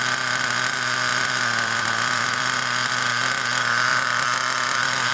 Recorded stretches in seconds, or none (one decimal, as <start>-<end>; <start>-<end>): 0.0-1.1; 2.9-3.9